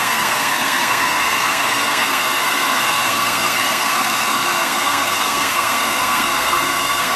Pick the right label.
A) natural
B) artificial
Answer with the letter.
B